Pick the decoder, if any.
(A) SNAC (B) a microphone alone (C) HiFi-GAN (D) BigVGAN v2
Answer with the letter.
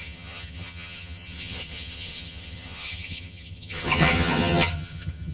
C